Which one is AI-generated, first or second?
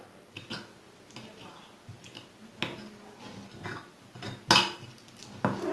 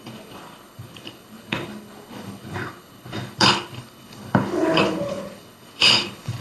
second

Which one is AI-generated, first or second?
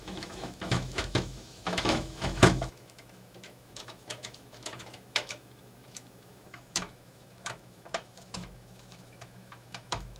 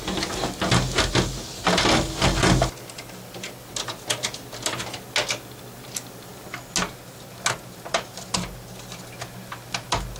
first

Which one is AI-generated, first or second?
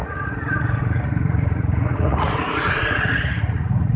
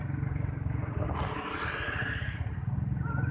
first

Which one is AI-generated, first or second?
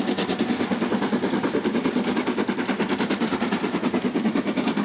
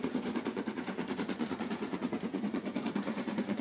second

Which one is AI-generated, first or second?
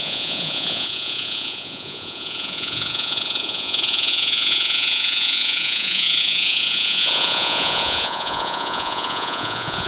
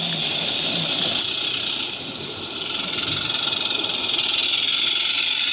first